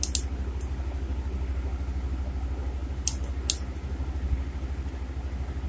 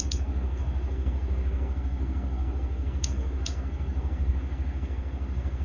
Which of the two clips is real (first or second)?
first